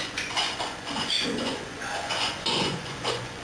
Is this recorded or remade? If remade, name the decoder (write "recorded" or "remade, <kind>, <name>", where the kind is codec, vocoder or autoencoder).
remade, vocoder, Vocos